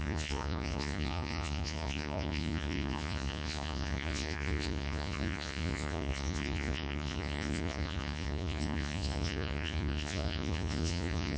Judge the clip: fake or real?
fake